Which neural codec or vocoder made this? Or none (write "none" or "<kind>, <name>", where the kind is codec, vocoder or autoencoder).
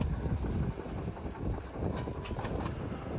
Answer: none